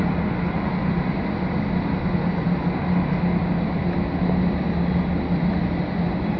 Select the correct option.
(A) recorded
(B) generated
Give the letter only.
A